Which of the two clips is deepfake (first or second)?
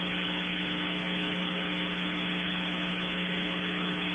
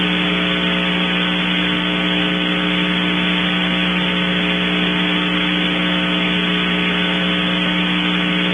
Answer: first